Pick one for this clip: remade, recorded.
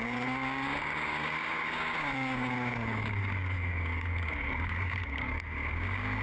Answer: remade